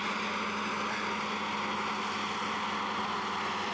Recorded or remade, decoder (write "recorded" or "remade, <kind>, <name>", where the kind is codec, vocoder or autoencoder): recorded